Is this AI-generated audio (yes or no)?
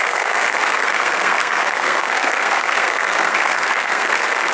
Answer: yes